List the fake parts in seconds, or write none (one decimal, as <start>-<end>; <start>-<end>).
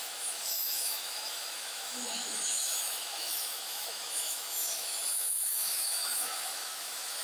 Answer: 0.0-7.2